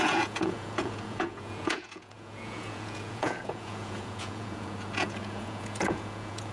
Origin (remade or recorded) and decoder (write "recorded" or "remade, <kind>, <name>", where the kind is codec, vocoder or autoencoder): remade, vocoder, Vocos